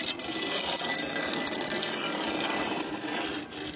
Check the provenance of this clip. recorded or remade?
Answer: recorded